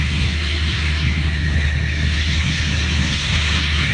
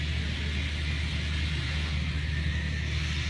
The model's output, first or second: first